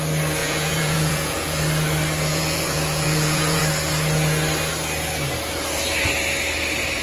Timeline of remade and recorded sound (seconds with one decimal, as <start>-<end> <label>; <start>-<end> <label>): 0.0-0.4 recorded; 0.4-1.6 remade; 1.6-2.3 recorded; 2.3-3.6 remade; 3.6-7.0 recorded